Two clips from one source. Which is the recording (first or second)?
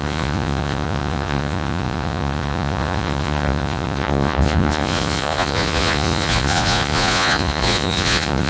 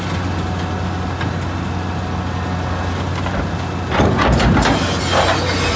second